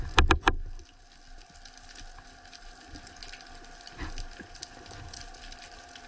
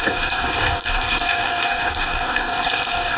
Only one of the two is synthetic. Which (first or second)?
second